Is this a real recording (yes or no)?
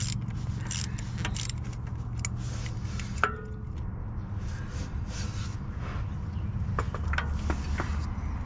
yes